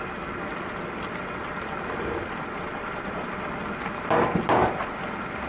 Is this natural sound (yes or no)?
yes